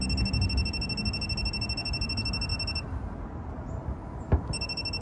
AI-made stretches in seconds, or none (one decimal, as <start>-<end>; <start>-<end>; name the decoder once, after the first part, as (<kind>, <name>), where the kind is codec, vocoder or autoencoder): none